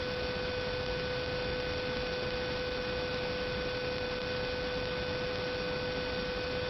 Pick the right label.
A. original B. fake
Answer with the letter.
A